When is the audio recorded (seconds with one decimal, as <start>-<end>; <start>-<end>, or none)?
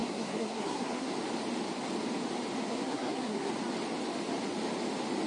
1.1-2.6; 3.5-5.3